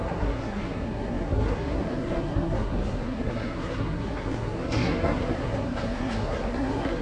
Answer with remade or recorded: remade